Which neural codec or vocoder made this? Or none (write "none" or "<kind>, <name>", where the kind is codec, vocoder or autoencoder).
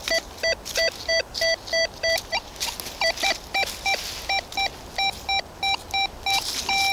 none